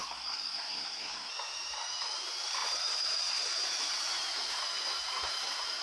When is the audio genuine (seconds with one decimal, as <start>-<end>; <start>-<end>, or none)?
1.3-5.8